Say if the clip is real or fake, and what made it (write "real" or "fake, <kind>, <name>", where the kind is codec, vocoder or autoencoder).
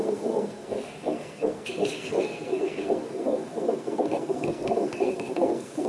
fake, codec, SNAC